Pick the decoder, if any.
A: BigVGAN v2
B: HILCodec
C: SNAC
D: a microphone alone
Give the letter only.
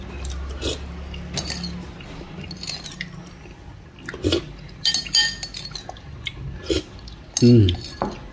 D